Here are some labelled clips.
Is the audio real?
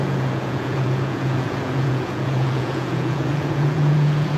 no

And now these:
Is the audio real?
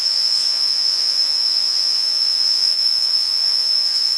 no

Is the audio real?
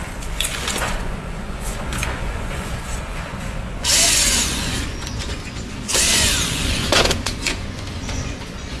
no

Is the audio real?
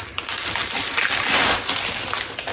yes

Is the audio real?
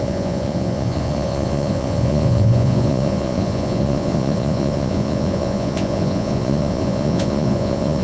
no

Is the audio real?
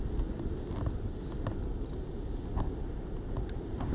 yes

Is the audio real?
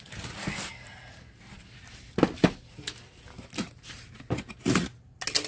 yes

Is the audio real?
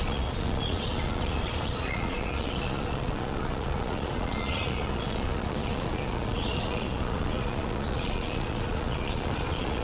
no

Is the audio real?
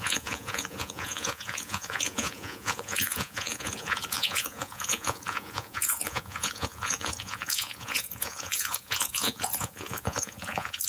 no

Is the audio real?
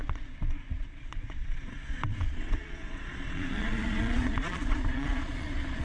no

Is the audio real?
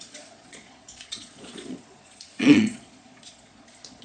no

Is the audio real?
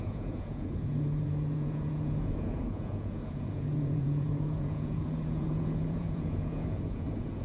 no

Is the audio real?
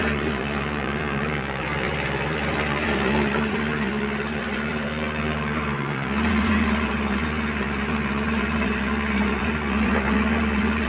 no